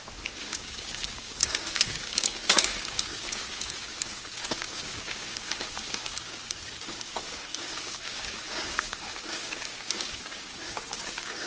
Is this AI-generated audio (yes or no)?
yes